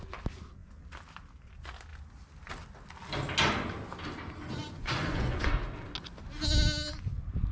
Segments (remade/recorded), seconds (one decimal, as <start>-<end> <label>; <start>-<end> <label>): 0.0-4.6 recorded; 4.6-5.5 remade; 5.5-7.5 recorded